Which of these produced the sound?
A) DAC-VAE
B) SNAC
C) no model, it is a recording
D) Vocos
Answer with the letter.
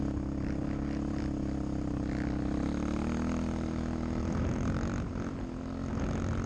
C